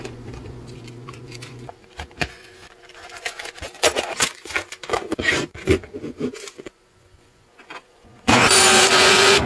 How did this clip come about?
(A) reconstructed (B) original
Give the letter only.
A